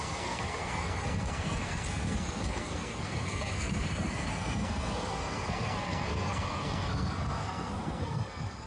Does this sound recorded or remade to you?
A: remade